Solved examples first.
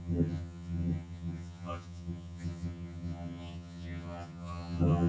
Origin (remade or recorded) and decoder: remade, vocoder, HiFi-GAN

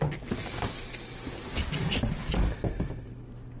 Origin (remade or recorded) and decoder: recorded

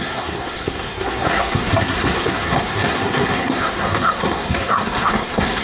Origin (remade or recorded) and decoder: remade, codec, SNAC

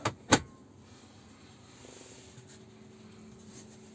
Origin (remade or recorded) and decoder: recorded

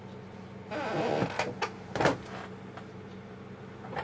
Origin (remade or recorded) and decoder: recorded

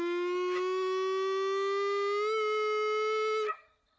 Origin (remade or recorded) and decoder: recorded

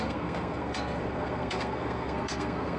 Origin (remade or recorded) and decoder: remade, codec, SNAC